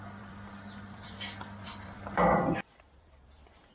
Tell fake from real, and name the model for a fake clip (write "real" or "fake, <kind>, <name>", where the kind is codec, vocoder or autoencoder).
fake, vocoder, BigVGAN v2